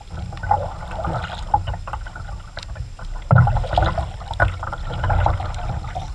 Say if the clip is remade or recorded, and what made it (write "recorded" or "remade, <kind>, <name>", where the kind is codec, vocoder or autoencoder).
recorded